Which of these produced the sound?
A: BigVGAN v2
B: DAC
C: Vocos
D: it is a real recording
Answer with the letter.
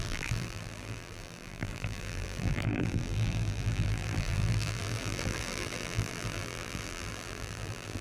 A